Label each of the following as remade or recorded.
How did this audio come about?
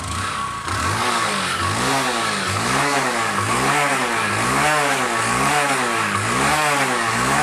remade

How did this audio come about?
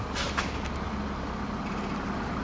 recorded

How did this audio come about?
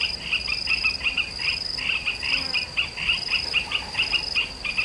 recorded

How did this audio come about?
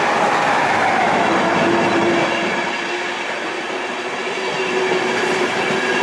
remade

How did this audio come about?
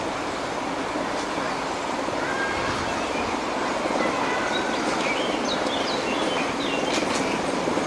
recorded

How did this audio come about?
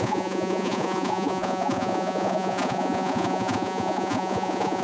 remade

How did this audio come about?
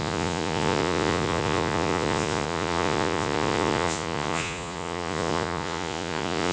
remade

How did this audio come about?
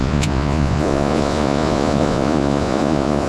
remade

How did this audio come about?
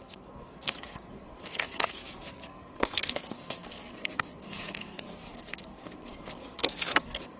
remade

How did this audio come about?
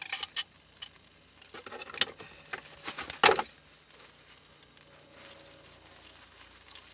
recorded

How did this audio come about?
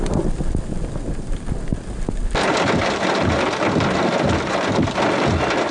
recorded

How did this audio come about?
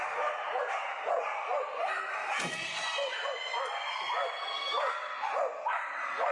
recorded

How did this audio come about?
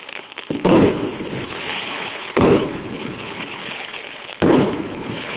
remade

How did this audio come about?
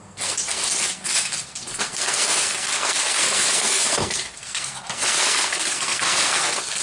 remade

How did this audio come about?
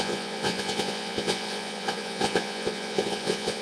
remade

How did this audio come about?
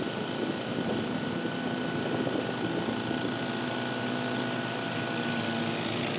recorded